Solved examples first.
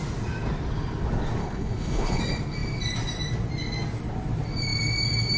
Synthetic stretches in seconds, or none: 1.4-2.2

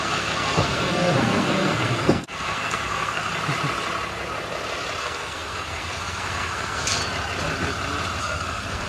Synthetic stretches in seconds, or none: 0.0-3.3; 5.0-7.0; 8.2-8.9

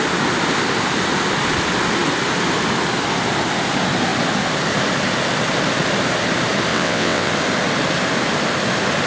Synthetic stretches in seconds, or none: 6.7-7.3

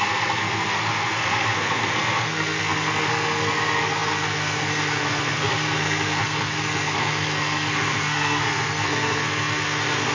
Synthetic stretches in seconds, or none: 0.0-10.1

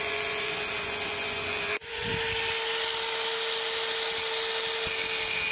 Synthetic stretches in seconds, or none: 0.0-2.1